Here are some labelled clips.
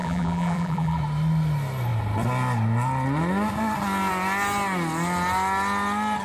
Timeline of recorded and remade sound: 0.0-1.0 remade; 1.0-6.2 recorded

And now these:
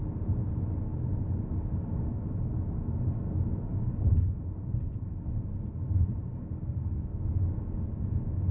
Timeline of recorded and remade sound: 0.0-1.5 recorded; 1.5-2.1 remade; 2.1-3.7 recorded; 3.7-4.4 remade; 4.4-5.8 recorded; 5.8-8.1 remade; 8.1-8.5 recorded

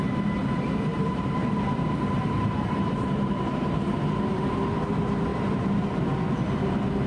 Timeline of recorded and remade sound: 0.0-0.9 recorded; 0.9-4.4 remade; 4.4-5.3 recorded; 5.3-6.0 remade; 6.0-7.1 recorded